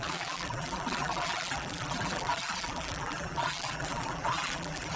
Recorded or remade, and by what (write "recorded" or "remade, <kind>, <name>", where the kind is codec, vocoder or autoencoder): remade, vocoder, BigVGAN v2